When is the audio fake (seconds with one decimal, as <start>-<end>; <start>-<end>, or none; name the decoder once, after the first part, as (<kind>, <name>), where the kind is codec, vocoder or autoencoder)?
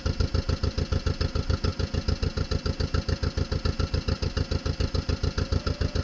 none